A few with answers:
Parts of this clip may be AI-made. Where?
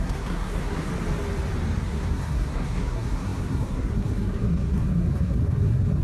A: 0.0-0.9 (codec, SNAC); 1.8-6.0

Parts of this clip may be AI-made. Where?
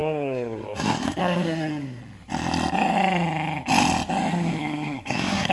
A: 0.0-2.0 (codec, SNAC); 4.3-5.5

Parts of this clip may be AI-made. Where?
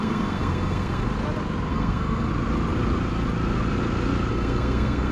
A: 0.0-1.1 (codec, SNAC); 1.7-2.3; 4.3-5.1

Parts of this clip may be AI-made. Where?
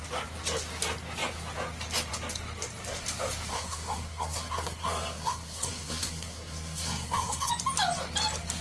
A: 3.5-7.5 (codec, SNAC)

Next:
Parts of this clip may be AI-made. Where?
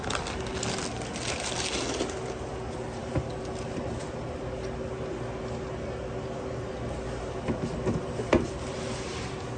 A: none